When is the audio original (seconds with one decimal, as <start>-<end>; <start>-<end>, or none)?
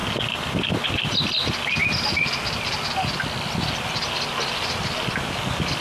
0.0-5.8